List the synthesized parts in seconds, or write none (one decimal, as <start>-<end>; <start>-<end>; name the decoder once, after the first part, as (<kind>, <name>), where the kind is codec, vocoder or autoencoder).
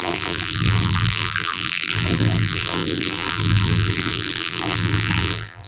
0.0-5.7 (vocoder, BigVGAN v2)